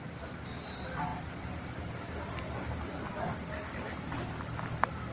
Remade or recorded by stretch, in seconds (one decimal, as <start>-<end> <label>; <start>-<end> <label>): 0.0-5.1 recorded